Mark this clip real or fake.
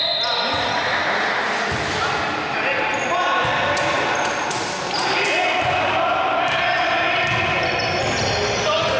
real